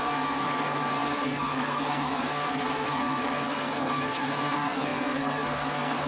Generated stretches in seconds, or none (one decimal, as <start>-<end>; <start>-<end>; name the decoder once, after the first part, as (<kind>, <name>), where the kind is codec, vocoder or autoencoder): 0.0-6.1 (codec, SNAC)